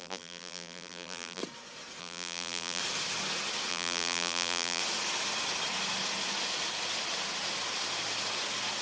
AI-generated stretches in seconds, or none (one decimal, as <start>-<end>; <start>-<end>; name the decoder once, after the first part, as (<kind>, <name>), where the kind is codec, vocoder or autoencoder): 0.0-1.4 (vocoder, BigVGAN v2); 2.0-2.8; 3.7-4.8